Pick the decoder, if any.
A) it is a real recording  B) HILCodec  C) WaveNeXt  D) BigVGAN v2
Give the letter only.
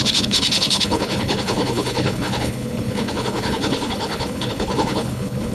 B